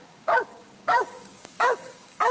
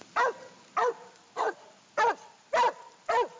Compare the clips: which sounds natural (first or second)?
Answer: second